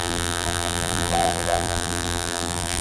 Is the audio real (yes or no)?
no